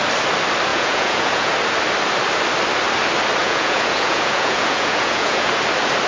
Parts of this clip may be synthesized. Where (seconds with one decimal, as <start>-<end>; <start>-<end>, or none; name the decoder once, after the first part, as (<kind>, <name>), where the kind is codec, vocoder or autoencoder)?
0.7-1.5 (vocoder, Vocos); 3.4-5.5